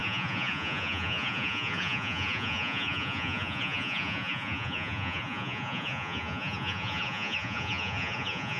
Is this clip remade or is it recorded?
remade